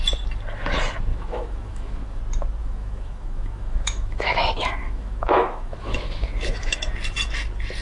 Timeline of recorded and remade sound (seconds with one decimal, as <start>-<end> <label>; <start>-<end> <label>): 0.0-1.1 recorded; 1.1-2.2 remade; 2.2-2.6 recorded; 2.6-6.9 remade; 6.9-7.8 recorded